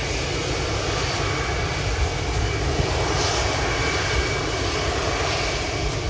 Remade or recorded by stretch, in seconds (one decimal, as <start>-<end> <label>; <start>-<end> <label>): 0.0-6.1 recorded